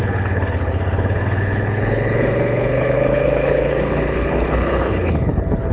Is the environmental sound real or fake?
fake